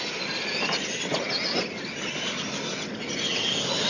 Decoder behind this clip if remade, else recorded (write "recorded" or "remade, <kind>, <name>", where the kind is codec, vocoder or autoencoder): recorded